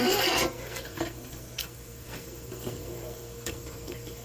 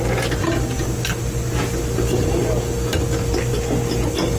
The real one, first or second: second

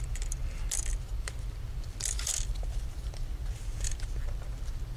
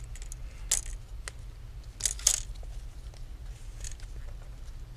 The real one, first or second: second